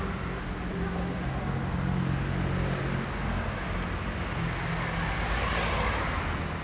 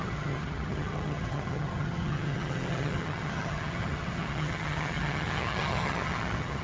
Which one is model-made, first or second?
second